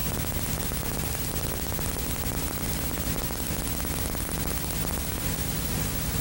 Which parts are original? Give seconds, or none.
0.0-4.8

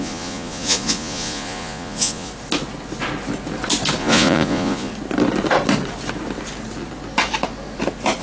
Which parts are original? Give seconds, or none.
2.3-4.0; 4.9-8.2